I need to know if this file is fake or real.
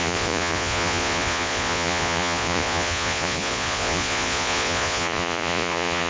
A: fake